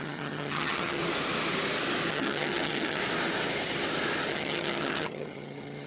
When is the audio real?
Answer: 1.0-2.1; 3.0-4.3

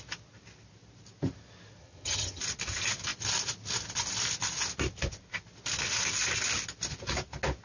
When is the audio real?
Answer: 0.0-1.8; 2.4-7.6

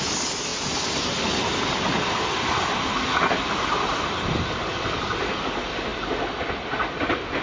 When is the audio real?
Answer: 0.0-7.4

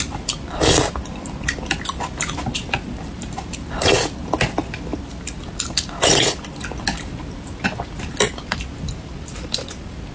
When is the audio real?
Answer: 0.0-10.1

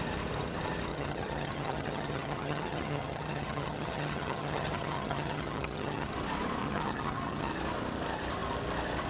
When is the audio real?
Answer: 0.0-0.9; 6.1-6.6; 7.5-9.1

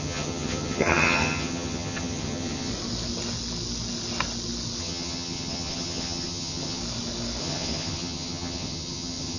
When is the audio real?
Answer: 2.7-4.8; 6.8-7.4

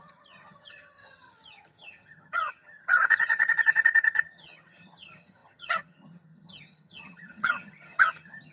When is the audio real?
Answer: none